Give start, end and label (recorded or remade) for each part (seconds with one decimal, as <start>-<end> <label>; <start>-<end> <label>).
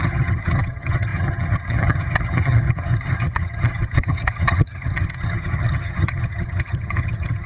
0.0-7.5 remade